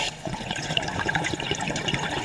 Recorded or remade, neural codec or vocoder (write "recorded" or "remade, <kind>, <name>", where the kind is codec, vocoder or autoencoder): remade, vocoder, Vocos